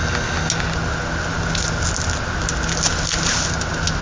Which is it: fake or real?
real